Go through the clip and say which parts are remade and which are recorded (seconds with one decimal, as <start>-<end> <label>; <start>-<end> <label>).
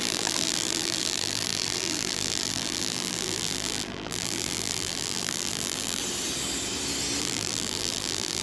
0.0-6.0 remade; 6.0-7.2 recorded; 7.2-8.4 remade